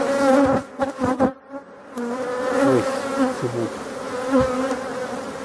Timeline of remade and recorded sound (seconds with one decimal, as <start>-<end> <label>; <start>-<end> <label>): 0.0-0.8 recorded; 0.8-1.3 remade; 1.3-5.4 recorded